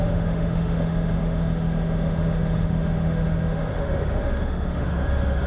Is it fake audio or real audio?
fake